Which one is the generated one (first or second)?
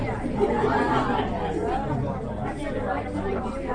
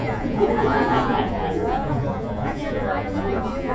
second